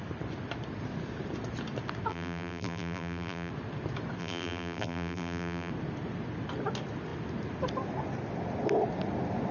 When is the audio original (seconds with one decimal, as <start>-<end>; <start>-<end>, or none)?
0.0-2.1; 3.5-4.2; 5.7-9.5